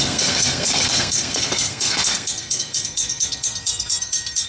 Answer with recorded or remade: remade